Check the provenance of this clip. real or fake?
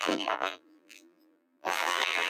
fake